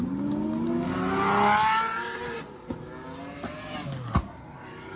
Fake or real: real